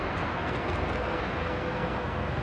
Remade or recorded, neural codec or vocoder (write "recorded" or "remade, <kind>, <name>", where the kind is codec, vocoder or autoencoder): remade, codec, SNAC